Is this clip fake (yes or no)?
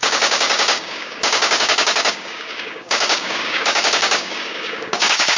yes